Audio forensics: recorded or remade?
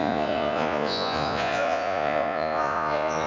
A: remade